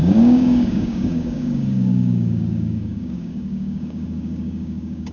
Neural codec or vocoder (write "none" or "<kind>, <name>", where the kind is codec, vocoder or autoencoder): codec, DAC